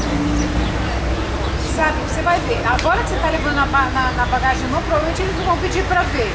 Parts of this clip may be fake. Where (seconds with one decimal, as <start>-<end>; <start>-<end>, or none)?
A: none